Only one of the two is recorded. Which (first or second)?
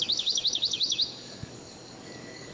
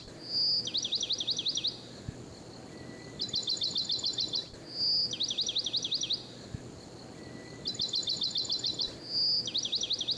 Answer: second